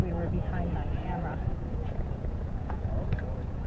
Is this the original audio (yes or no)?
no